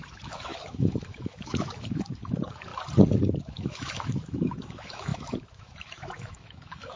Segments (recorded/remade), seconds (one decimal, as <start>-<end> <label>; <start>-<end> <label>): 0.0-2.7 remade; 2.7-3.4 recorded; 3.4-7.0 remade